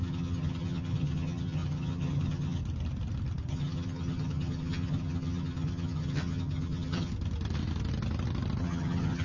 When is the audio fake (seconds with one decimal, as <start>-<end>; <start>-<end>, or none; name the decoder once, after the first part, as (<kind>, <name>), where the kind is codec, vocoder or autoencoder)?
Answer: 0.0-2.6 (vocoder, HiFi-GAN); 3.5-7.1; 8.6-9.2